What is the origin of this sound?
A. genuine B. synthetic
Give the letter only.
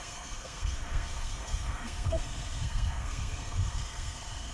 B